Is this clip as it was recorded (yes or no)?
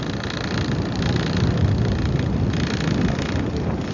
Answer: yes